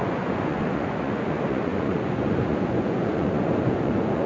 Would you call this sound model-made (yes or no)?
yes